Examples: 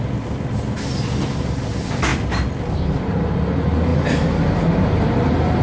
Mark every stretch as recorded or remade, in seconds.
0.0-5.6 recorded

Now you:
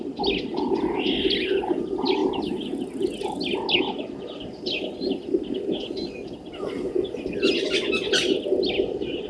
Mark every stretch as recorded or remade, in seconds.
0.0-9.3 recorded